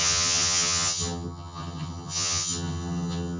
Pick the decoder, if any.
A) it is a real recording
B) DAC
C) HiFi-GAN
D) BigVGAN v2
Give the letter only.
C